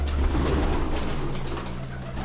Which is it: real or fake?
real